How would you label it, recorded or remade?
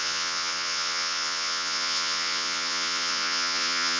remade